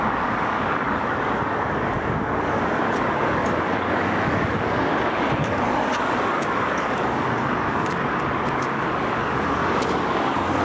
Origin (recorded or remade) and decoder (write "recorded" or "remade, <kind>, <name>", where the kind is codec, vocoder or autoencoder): remade, codec, DAC